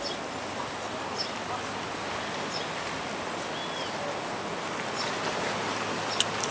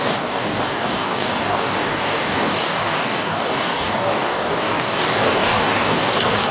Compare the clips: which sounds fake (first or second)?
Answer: second